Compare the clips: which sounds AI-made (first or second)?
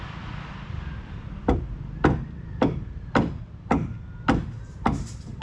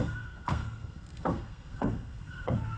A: second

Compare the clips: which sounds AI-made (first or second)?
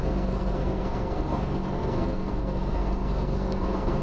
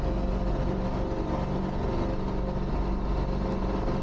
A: first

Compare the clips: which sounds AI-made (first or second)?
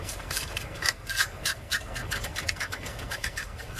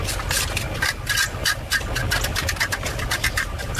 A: first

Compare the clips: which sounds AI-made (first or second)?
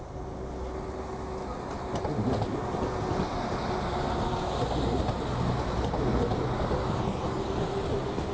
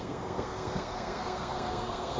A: second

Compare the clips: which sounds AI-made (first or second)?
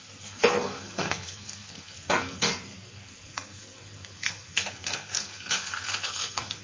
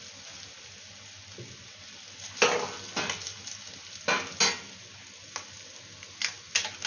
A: first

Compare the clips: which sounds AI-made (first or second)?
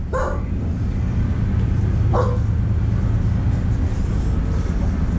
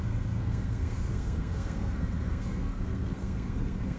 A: second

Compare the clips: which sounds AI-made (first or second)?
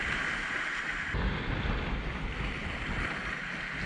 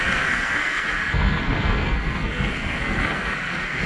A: second